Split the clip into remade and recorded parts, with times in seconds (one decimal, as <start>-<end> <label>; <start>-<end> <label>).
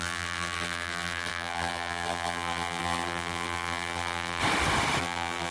0.0-4.4 remade; 4.4-5.0 recorded; 5.0-5.5 remade